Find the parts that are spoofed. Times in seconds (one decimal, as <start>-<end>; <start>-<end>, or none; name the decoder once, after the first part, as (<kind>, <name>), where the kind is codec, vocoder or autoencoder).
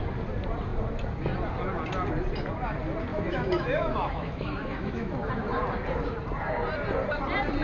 3.1-5.3 (autoencoder, DAC-VAE)